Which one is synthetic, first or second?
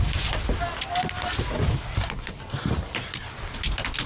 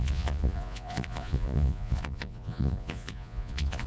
second